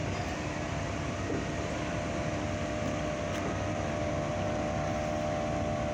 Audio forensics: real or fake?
real